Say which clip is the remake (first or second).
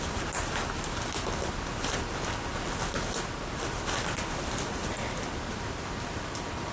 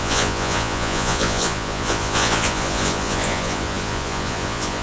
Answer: second